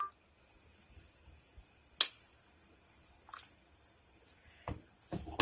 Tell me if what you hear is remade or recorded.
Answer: recorded